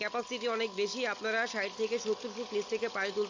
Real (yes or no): yes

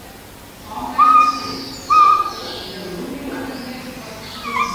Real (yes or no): yes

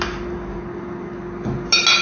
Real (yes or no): yes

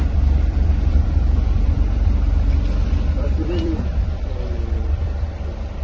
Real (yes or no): no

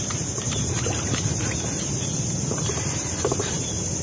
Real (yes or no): no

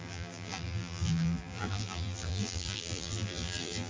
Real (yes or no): no